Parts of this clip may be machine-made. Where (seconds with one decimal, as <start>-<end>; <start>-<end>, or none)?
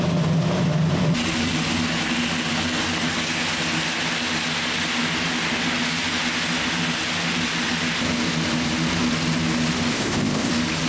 9.9-10.5